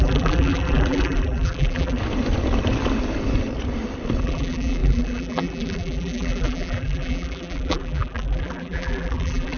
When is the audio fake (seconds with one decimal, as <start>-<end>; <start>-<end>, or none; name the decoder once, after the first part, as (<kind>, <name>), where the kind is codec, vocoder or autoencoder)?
0.0-2.0 (vocoder, BigVGAN v2); 4.2-9.6